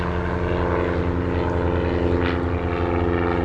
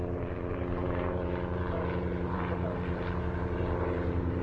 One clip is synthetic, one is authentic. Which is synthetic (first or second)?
second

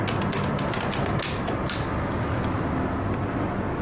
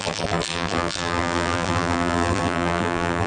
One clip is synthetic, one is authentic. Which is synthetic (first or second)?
second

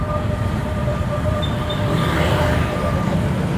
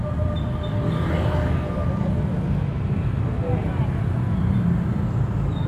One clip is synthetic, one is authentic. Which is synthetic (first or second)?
first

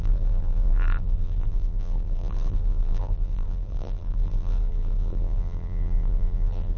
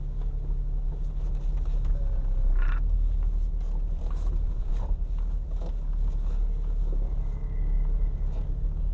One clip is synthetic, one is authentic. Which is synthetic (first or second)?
first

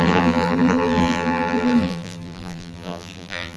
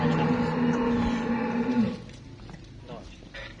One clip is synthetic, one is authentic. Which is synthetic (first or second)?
first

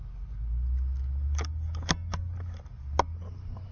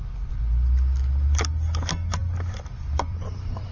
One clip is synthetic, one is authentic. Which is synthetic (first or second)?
second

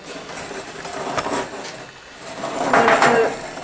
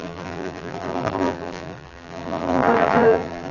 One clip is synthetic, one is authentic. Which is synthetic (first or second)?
second